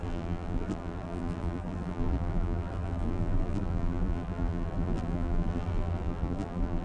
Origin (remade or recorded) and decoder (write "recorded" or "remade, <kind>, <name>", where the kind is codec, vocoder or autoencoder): remade, vocoder, BigVGAN v2